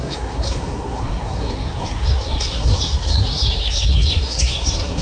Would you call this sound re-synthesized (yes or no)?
yes